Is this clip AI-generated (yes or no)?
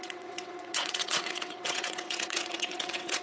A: yes